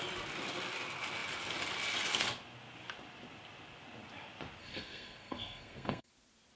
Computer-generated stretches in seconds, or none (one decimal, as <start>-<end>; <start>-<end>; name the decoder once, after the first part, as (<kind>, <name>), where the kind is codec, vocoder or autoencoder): 4.6-6.1 (codec, SNAC)